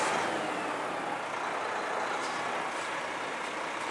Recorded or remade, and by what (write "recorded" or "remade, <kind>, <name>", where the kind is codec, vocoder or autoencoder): recorded